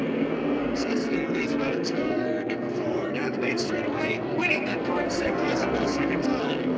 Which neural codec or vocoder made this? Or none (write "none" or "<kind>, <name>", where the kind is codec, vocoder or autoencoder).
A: codec, SNAC